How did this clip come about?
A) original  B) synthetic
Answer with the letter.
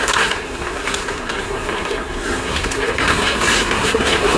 B